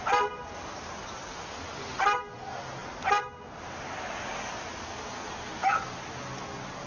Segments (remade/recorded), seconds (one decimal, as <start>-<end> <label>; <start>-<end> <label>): 0.0-6.9 recorded